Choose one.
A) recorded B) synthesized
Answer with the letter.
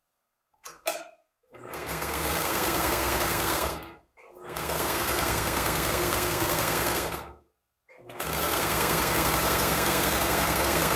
B